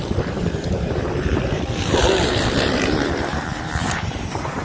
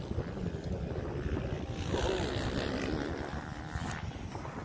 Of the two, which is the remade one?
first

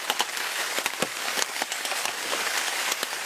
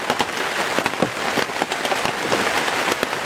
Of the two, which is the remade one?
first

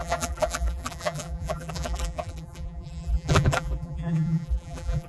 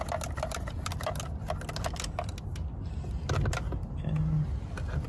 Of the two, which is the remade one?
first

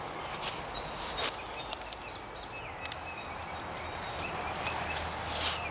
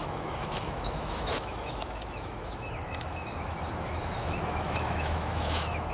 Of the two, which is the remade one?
second